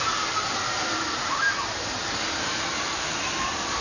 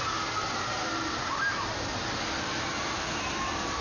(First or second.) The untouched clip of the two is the second